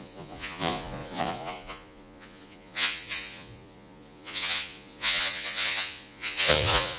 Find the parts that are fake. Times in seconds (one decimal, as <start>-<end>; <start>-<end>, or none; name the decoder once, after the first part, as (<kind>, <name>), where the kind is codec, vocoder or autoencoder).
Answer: 0.0-7.0 (vocoder, Vocos)